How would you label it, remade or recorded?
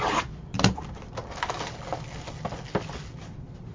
recorded